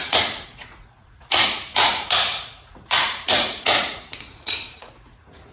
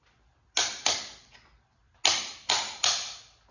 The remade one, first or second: first